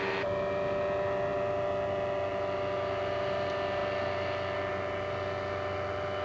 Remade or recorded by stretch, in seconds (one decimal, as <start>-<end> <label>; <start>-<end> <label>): 0.0-6.2 recorded